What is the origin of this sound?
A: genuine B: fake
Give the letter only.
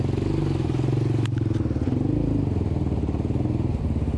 A